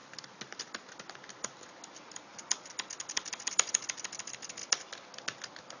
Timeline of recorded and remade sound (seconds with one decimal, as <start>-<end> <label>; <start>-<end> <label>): 0.0-5.8 recorded